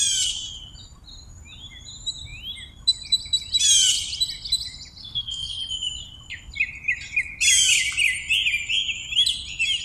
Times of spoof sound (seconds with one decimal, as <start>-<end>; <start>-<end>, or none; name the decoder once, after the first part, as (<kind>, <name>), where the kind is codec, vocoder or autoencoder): 5.0-5.6 (codec, SNAC)